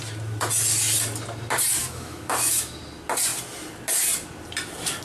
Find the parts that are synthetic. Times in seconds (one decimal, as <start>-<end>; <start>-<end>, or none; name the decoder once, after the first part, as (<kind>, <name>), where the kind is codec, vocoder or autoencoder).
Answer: 1.8-2.8 (autoencoder, DAC-VAE)